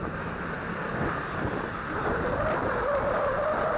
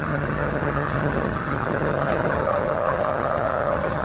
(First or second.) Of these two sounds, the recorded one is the first